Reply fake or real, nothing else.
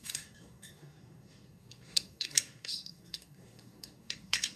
fake